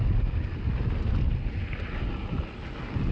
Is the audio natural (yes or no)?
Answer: yes